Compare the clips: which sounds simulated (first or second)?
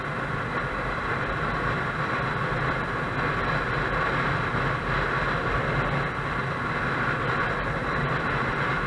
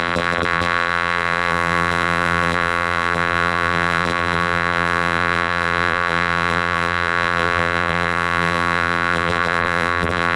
second